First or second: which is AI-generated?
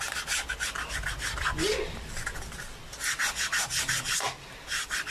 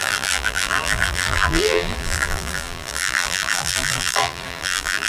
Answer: second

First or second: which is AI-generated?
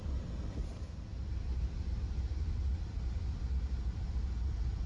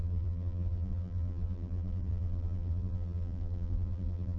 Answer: second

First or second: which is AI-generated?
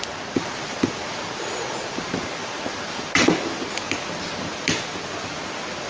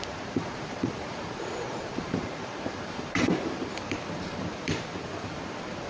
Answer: second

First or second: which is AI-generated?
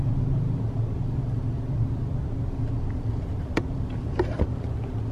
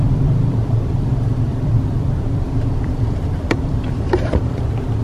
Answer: second